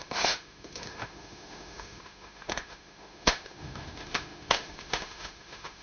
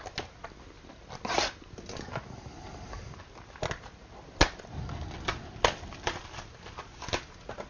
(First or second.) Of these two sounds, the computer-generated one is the first